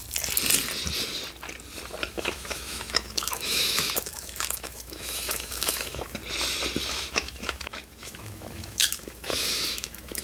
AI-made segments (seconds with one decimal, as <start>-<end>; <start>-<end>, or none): 2.1-6.2; 6.9-10.2